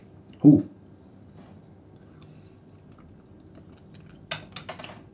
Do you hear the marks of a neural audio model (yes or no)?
no